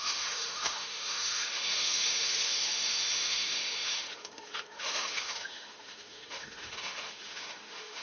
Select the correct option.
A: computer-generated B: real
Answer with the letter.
A